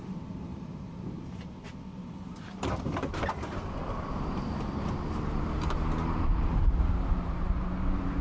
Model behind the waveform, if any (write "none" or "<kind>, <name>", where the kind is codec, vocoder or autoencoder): vocoder, BigVGAN v2